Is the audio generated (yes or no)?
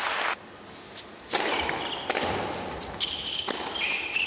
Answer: no